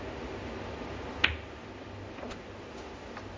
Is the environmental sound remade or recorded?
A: recorded